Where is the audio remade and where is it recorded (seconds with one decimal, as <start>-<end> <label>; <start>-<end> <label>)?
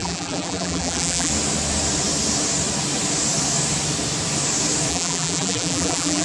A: 0.0-1.3 remade; 1.3-4.9 recorded; 4.9-6.2 remade